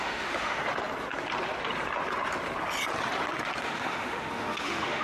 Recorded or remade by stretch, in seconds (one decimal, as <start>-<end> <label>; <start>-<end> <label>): 0.0-0.6 remade; 0.6-3.6 recorded; 3.6-5.0 remade